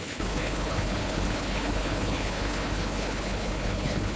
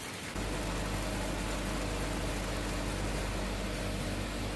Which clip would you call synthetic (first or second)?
first